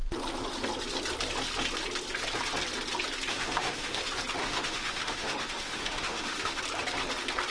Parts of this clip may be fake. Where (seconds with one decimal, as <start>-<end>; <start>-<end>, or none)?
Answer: 3.3-4.0; 4.4-6.6